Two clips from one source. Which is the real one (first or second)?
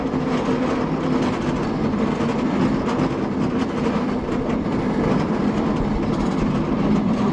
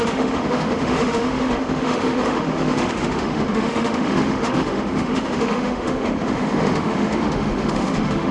first